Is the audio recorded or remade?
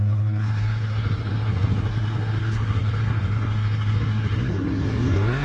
remade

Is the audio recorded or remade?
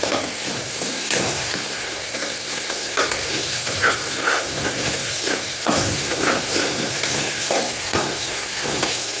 remade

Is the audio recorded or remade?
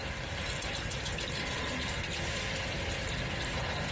recorded